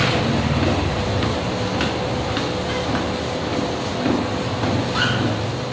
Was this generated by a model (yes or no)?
no